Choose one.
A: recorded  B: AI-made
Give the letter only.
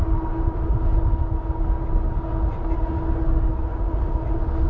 A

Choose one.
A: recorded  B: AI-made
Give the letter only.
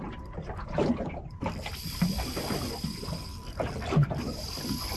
B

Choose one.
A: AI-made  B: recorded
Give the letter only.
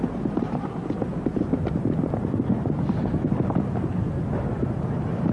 B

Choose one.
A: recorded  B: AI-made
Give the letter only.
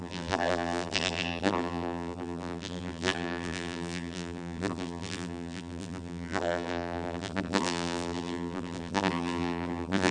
B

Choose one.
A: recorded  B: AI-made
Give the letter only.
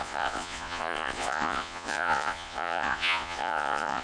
B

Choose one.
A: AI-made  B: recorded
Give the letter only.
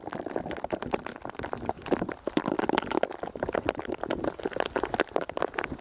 B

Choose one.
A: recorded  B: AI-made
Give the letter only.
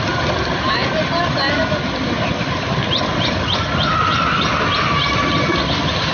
A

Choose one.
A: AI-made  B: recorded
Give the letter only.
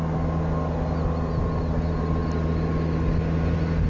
B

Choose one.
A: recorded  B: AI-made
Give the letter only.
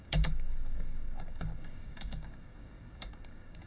B